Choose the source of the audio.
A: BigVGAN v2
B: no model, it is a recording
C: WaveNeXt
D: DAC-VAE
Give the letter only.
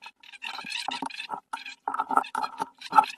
A